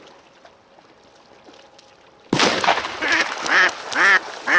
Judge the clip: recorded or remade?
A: recorded